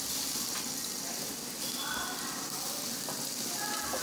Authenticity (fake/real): real